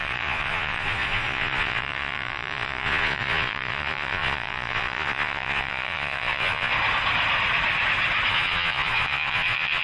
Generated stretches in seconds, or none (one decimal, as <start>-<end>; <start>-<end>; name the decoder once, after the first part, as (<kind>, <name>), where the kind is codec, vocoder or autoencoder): 0.0-6.7 (vocoder, Vocos); 8.3-9.8